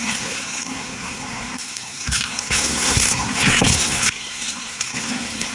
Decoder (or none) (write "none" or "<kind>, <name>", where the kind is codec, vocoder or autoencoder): codec, SNAC